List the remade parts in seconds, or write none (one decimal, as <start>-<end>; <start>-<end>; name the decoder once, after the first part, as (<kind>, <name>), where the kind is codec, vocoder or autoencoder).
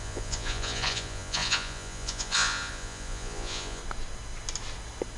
0.0-3.8 (vocoder, Vocos)